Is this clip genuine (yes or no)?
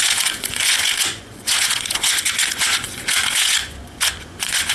no